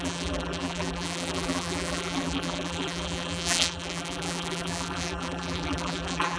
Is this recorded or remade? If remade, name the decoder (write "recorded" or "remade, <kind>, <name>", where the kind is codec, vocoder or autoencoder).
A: remade, vocoder, BigVGAN v2